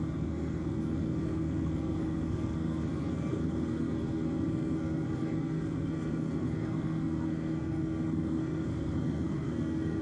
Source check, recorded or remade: remade